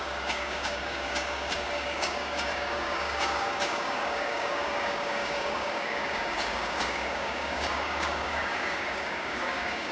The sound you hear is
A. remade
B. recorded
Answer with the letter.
A